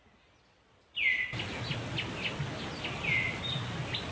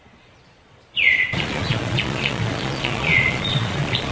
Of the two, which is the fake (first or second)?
second